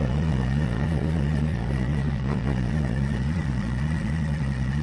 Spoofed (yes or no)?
yes